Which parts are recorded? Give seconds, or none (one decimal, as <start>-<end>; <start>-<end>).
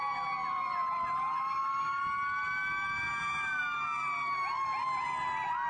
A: 0.0-5.7